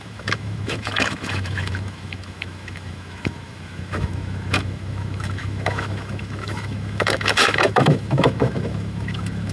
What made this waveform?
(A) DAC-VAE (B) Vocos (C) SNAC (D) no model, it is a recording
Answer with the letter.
A